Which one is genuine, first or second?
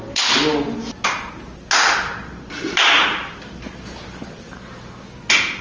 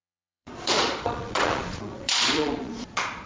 first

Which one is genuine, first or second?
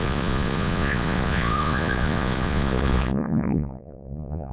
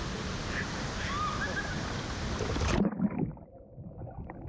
second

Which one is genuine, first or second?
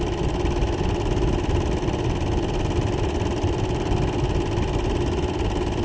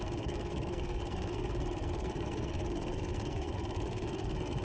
first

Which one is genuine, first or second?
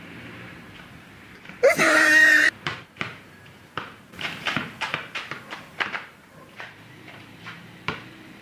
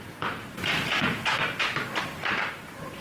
second